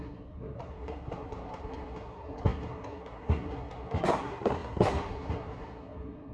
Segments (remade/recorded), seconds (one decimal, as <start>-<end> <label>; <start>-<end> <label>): 0.0-6.3 remade